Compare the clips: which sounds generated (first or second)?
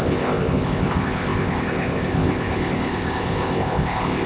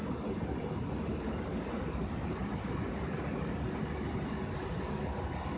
first